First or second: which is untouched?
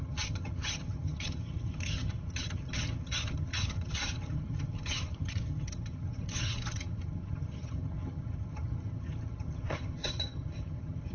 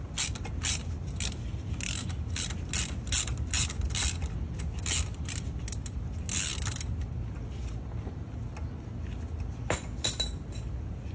second